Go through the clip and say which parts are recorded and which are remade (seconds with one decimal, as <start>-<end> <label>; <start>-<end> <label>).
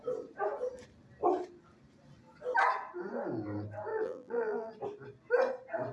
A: 0.0-3.9 recorded; 3.9-4.7 remade; 4.7-5.9 recorded